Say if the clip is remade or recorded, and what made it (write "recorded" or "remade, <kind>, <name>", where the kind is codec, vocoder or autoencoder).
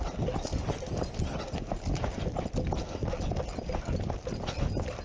recorded